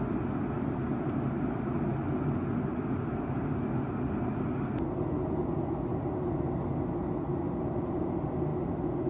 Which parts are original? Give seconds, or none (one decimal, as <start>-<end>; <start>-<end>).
0.0-9.1